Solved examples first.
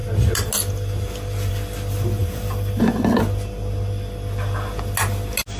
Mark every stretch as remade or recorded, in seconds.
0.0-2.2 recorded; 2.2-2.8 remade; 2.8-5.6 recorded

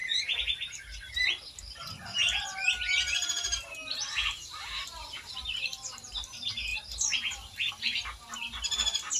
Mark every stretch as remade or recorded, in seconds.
0.0-9.2 remade

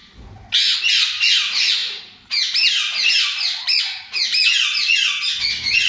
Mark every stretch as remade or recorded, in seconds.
0.0-1.8 recorded; 1.8-3.8 remade; 3.8-5.9 recorded